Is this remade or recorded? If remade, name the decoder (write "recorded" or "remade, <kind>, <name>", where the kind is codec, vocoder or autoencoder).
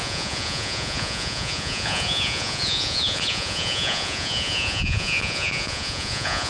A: remade, vocoder, Vocos